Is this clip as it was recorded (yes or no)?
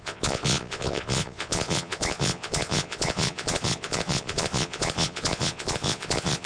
no